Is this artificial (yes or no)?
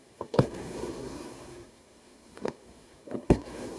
yes